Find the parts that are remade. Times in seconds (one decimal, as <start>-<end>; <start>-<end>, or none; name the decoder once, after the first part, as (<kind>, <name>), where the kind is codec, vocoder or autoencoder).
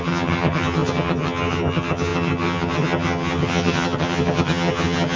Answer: 0.0-5.2 (vocoder, HiFi-GAN)